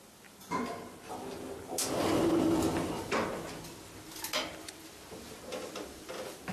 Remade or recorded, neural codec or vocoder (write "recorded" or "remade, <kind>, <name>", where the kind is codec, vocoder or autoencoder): recorded